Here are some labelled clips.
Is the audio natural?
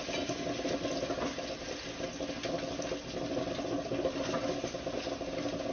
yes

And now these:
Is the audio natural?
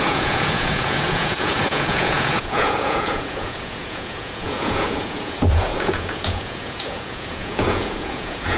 no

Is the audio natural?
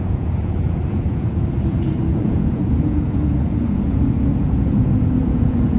no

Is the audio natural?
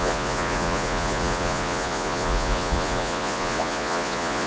no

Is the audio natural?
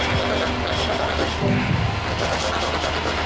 yes